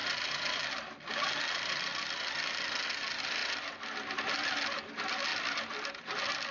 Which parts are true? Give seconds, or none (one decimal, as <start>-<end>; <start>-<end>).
1.1-3.4; 4.1-5.3; 6.0-6.5